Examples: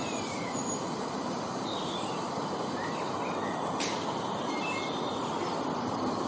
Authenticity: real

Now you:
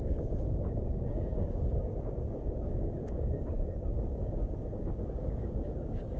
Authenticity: fake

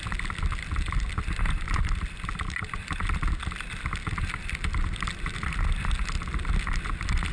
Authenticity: real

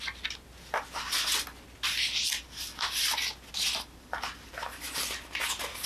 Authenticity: real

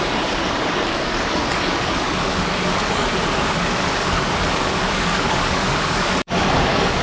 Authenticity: fake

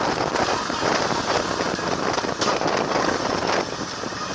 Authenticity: real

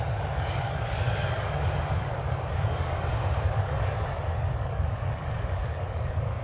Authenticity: fake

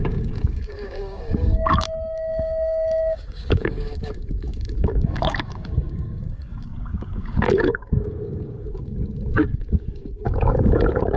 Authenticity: fake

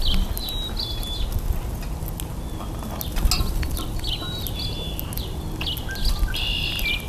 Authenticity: real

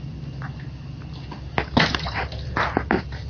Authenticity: real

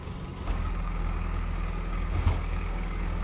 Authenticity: fake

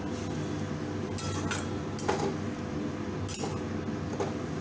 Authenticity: real